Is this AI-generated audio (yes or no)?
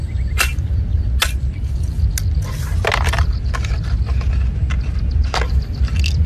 no